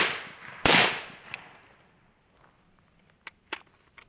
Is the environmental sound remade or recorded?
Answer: recorded